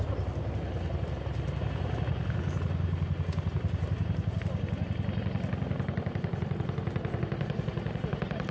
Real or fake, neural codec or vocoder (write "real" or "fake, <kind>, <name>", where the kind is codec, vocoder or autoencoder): real